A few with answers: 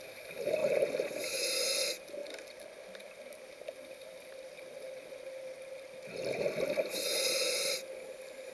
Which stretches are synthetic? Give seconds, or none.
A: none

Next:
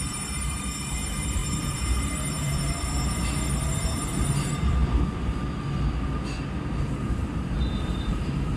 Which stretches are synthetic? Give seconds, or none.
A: 0.0-4.8 (vocoder, BigVGAN v2); 7.0-8.6